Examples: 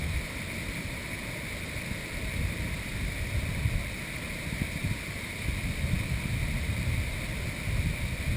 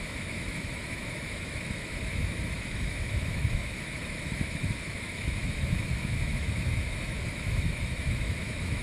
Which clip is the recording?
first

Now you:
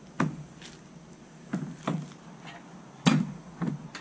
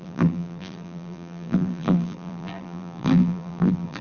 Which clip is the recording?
first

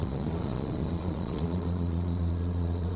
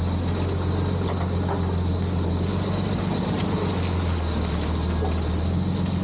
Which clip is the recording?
second